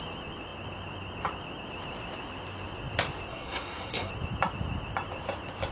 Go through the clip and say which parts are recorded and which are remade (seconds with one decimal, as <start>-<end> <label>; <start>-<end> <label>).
0.0-3.3 recorded; 3.3-4.1 remade; 4.1-5.7 recorded